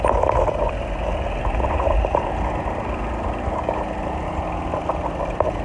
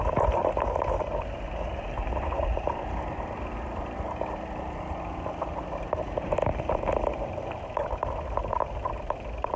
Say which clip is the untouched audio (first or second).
first